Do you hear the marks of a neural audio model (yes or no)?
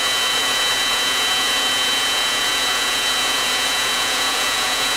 yes